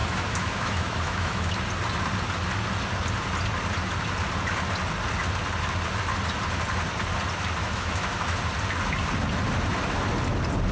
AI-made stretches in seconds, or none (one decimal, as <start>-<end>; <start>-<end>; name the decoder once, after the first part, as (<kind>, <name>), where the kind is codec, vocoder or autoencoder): 0.0-1.5 (autoencoder, DAC-VAE); 7.6-8.4